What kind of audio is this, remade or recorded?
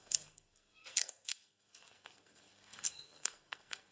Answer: remade